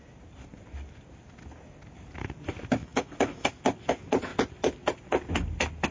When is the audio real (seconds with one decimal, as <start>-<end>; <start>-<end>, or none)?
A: 0.0-2.8; 3.5-5.9

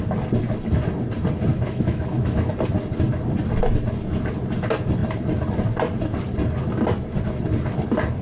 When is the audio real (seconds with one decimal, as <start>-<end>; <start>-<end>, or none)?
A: 0.0-1.5; 2.5-8.2

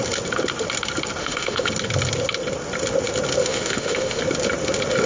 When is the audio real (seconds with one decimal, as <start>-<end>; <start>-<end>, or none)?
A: 0.0-1.2; 1.7-3.4; 4.2-5.1

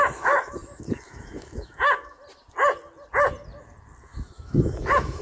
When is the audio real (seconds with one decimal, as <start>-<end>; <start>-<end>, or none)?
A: 2.2-4.0